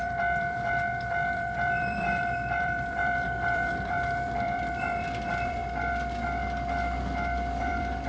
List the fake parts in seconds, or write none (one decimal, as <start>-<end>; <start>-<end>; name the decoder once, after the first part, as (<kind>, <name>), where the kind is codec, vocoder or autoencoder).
0.0-5.6 (vocoder, BigVGAN v2); 7.6-8.1